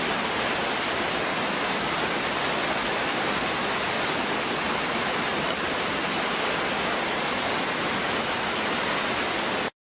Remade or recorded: recorded